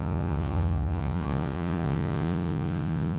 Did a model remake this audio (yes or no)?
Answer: yes